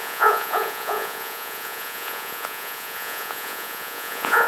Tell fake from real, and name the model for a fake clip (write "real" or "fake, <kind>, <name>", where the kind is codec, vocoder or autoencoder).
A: fake, vocoder, Vocos